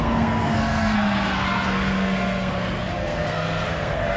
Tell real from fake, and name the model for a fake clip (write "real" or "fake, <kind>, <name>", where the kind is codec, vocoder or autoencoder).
fake, codec, SNAC